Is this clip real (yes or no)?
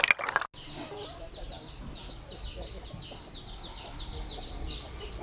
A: yes